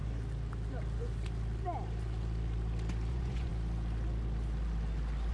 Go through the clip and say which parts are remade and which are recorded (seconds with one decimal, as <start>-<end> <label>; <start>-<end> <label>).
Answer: 0.0-3.1 recorded; 3.1-3.5 remade; 3.5-5.3 recorded